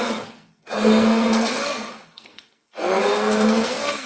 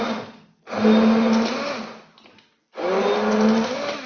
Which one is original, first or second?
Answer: second